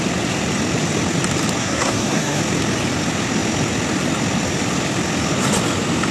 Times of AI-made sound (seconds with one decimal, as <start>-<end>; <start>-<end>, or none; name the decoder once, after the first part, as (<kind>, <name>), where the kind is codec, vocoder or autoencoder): 1.6-2.4 (codec, SNAC)